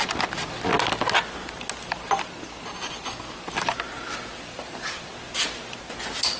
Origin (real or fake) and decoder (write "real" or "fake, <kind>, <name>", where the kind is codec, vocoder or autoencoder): real